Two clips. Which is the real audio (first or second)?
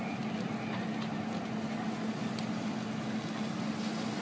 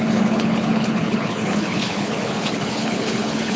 first